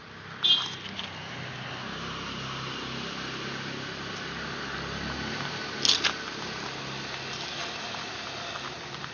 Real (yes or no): yes